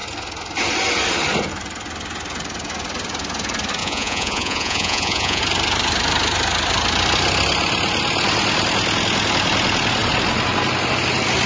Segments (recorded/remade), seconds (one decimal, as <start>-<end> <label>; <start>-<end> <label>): 0.0-3.8 recorded; 3.8-5.4 remade; 5.4-11.5 recorded